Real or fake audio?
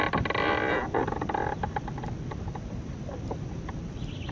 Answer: real